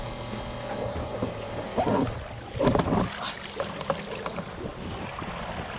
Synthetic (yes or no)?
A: no